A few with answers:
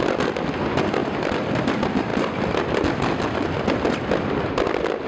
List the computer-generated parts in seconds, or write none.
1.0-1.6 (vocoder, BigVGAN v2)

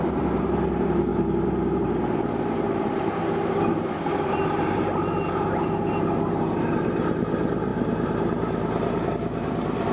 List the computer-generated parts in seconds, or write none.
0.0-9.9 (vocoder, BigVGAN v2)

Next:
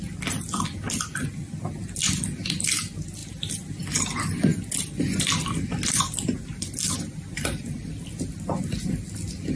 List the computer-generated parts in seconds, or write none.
3.2-8.1 (vocoder, BigVGAN v2)

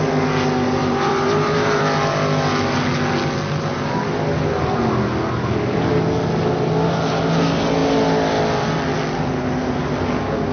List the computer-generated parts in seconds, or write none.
0.8-1.8 (vocoder, BigVGAN v2)

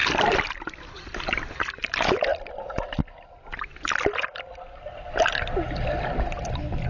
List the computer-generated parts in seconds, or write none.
0.0-1.7 (vocoder, BigVGAN v2)